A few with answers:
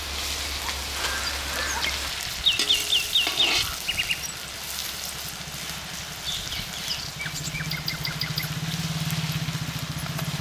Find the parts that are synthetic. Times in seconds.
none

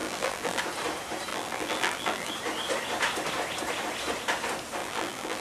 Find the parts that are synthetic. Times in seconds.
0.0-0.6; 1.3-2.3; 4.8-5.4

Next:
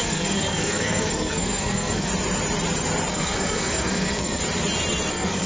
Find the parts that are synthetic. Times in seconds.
0.0-2.1; 3.1-4.4; 5.1-5.5